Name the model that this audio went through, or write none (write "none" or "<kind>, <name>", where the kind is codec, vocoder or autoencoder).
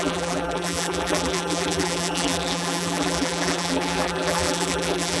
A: vocoder, BigVGAN v2